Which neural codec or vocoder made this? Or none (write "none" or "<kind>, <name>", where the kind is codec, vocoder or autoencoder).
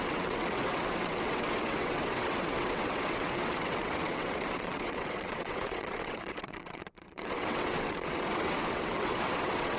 vocoder, WaveNeXt